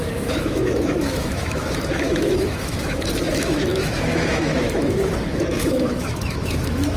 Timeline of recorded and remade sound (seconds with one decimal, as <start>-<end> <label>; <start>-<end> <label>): 0.0-7.0 remade